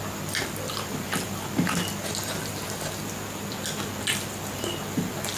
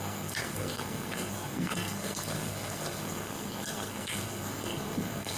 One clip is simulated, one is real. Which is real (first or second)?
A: first